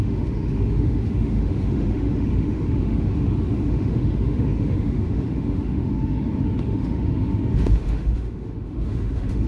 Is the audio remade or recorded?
remade